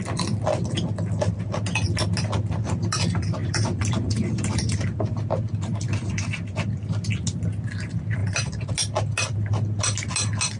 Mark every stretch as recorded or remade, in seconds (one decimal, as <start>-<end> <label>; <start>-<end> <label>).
0.0-3.4 recorded; 3.4-4.8 remade; 4.8-8.2 recorded; 8.2-8.7 remade; 8.7-10.6 recorded